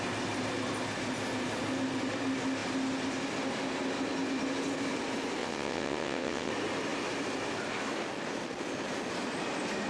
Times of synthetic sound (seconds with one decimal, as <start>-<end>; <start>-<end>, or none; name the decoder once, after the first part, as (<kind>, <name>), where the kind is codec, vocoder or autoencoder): 5.4-6.5 (vocoder, WaveNeXt)